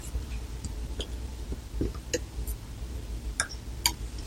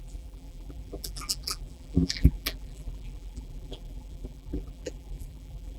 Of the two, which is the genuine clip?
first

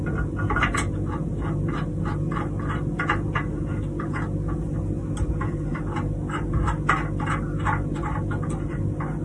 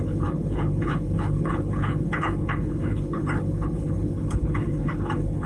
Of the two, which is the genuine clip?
first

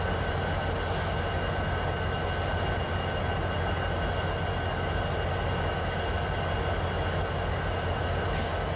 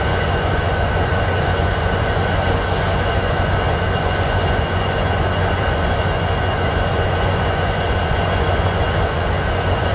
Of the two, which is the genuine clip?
first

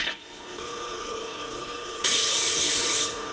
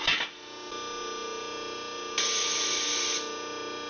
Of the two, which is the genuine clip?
second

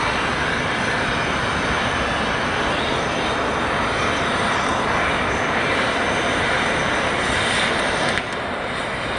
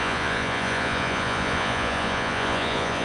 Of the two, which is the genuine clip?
first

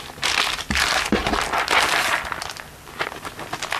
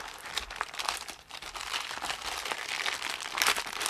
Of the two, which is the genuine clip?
first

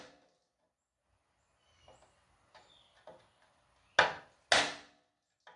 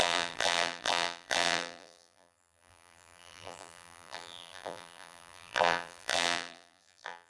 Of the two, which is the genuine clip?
first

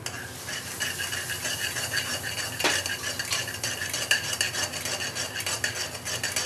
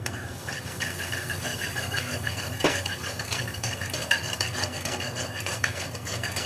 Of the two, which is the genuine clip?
first